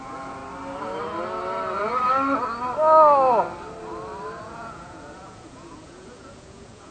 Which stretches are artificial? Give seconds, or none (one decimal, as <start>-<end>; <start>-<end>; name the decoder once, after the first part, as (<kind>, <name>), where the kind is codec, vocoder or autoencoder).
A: 0.0-0.4 (vocoder, Vocos); 4.4-6.9